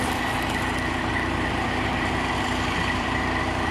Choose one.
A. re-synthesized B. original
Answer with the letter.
A